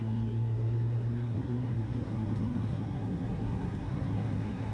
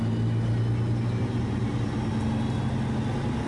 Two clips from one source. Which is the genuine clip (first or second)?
second